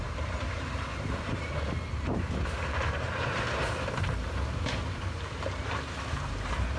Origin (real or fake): fake